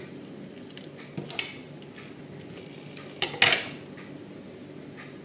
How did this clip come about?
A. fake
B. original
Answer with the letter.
B